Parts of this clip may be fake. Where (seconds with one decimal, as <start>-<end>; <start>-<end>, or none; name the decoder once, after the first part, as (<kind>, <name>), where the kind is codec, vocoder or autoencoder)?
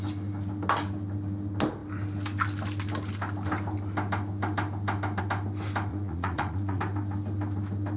5.9-6.8 (vocoder, Vocos)